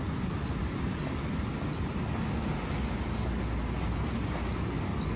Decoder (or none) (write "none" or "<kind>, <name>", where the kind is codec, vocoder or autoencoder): none